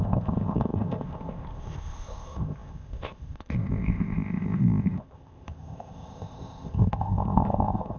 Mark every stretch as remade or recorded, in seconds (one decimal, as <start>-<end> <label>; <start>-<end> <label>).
0.0-8.0 remade